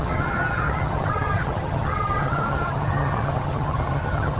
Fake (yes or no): yes